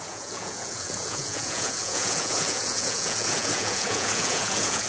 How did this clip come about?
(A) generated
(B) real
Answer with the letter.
A